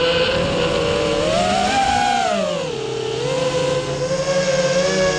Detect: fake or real real